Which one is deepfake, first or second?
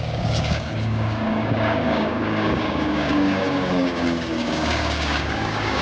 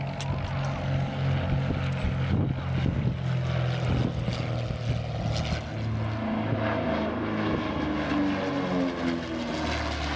first